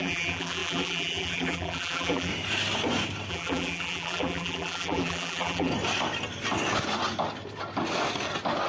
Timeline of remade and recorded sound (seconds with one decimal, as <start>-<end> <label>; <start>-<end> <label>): 0.0-2.3 remade; 2.3-3.3 recorded; 3.3-5.7 remade; 5.7-8.7 recorded